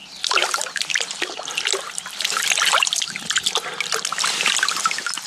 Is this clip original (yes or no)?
yes